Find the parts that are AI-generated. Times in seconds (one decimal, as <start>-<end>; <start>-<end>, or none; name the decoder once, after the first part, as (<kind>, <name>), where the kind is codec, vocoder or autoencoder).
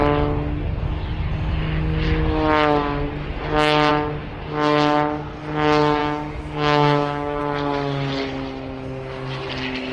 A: 6.0-7.4 (autoencoder, DAC-VAE)